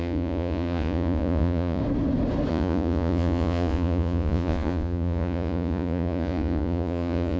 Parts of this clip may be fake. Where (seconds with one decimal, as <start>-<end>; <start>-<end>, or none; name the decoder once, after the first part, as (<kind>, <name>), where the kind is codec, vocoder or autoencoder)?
0.0-1.8 (vocoder, Vocos); 2.5-7.4